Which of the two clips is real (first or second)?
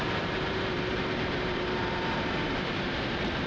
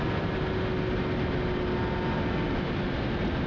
second